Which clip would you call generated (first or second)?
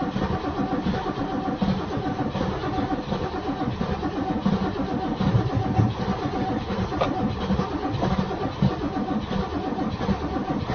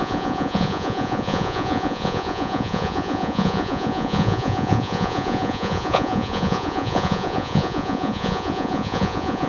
second